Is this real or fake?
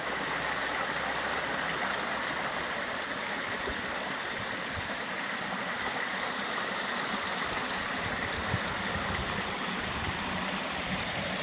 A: real